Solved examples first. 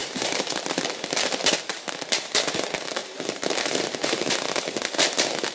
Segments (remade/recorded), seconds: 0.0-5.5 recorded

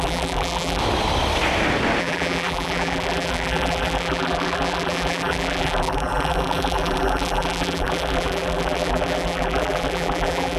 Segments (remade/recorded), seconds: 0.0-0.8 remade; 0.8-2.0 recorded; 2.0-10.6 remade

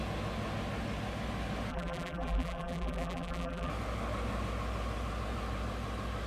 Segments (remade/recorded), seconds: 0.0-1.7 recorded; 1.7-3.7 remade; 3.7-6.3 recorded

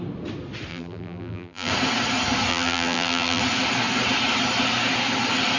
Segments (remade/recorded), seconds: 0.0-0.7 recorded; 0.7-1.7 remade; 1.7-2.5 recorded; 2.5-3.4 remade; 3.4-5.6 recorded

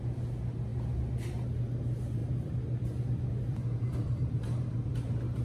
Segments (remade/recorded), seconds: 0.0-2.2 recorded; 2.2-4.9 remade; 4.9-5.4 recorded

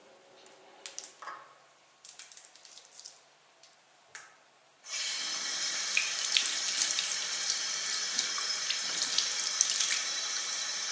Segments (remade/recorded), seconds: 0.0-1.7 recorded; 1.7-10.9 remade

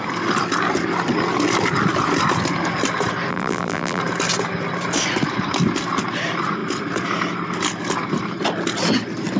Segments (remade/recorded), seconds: 0.0-3.3 recorded; 3.3-4.0 remade; 4.0-9.4 recorded